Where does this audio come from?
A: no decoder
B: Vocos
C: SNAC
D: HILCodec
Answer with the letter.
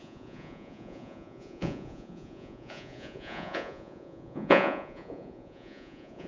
B